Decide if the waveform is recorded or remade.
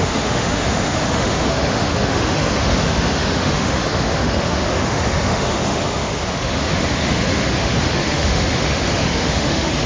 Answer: remade